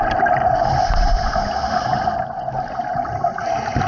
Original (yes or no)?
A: yes